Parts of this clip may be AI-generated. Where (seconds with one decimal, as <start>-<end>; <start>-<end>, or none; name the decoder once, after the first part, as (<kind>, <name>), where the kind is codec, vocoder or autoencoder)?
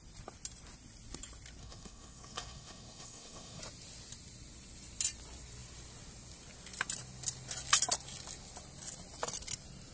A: 1.6-3.6 (codec, SNAC)